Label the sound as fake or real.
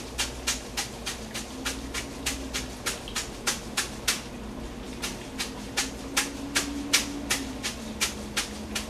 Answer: real